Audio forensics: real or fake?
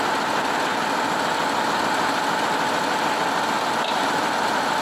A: real